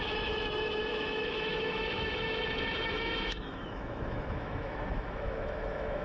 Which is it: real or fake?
fake